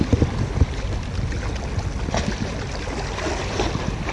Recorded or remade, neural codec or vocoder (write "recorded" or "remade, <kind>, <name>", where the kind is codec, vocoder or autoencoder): recorded